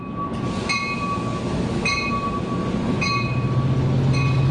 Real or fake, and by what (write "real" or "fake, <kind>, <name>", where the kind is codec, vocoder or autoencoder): real